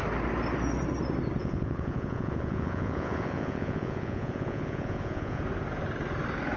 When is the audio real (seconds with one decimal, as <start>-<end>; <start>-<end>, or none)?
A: 0.0-1.4; 5.4-6.6